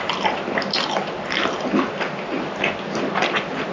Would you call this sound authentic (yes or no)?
yes